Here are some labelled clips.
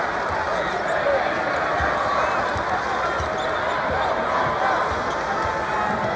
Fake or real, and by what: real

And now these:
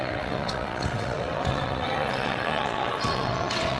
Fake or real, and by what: fake, vocoder, WaveNeXt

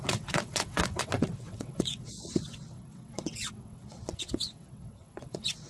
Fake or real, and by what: fake, vocoder, WaveNeXt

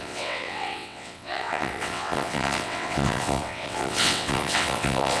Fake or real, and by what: fake, vocoder, WaveNeXt